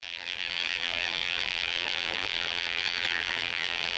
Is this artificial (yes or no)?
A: yes